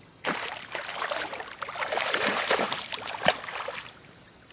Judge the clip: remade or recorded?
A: recorded